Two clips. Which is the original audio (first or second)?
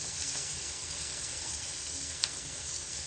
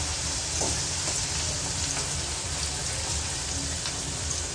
second